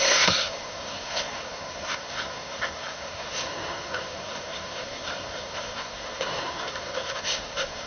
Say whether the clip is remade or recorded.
remade